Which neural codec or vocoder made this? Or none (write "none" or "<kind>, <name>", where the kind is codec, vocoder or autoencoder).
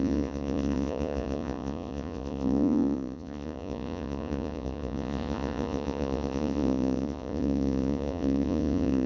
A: vocoder, Vocos